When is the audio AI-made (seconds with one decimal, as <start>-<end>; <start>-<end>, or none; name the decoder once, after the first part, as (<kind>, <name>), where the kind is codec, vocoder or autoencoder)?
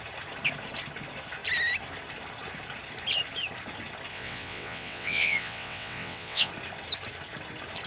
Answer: 4.1-6.5 (vocoder, WaveNeXt)